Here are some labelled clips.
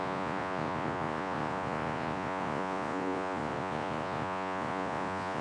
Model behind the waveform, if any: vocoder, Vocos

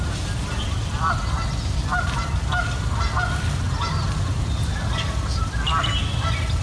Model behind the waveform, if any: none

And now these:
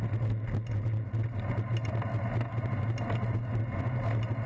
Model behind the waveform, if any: none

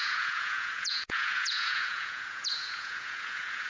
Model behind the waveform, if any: vocoder, Vocos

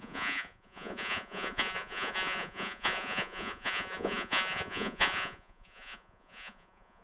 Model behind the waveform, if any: vocoder, Vocos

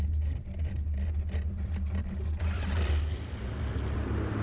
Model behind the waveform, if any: none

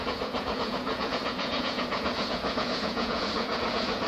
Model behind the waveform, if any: vocoder, Vocos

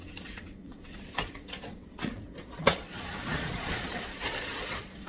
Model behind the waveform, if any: vocoder, Vocos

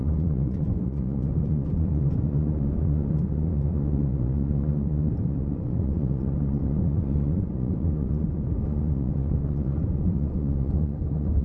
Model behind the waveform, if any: vocoder, Vocos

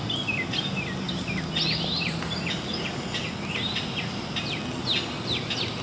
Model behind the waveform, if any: none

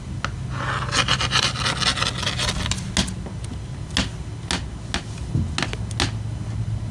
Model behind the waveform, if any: none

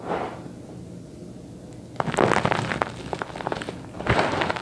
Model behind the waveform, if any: none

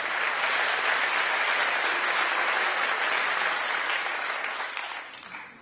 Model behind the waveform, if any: none